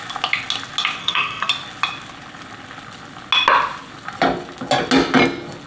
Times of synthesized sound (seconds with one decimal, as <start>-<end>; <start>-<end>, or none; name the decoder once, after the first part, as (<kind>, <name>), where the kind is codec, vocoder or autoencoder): 1.0-1.5 (codec, SNAC)